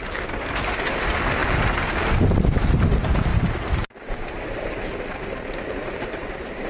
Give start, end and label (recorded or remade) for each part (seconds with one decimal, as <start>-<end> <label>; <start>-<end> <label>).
0.0-1.4 recorded; 1.4-2.2 remade; 2.2-3.3 recorded; 3.3-6.7 remade